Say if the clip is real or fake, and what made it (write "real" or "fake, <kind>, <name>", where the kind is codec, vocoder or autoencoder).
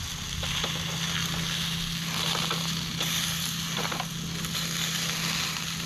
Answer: real